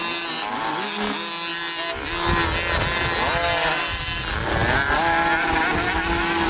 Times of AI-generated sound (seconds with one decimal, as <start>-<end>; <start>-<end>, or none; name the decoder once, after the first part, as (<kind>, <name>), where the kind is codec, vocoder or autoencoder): none